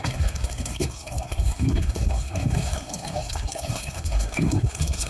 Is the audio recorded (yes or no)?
no